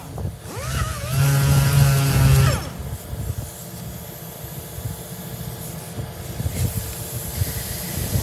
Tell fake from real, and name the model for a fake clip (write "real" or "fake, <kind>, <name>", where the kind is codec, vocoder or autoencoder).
real